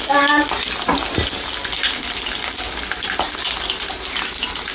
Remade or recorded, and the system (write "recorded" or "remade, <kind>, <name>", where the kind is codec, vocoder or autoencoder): recorded